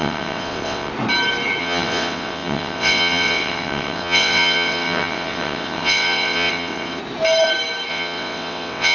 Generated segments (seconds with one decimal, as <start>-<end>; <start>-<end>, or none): 0.0-0.9; 1.6-7.0; 7.9-8.9